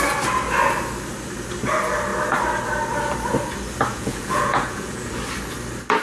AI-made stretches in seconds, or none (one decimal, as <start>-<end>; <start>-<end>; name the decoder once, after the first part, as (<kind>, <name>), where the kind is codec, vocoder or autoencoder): 3.9-5.1 (vocoder, Vocos)